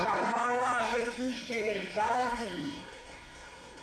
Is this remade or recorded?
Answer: remade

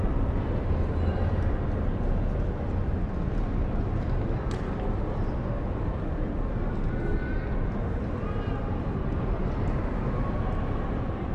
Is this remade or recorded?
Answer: recorded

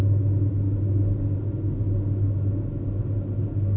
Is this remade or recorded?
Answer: recorded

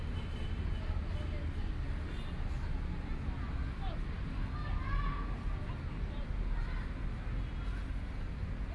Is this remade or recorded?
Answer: recorded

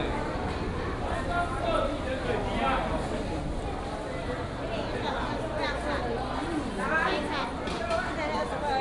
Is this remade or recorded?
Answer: recorded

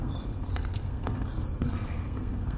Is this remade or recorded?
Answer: remade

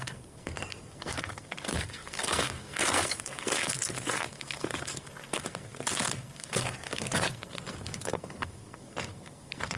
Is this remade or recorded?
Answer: remade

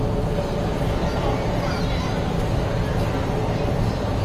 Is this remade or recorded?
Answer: recorded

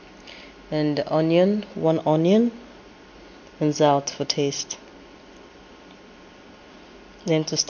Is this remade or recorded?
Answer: recorded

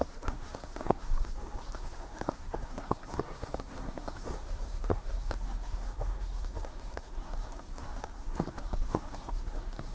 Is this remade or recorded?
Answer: remade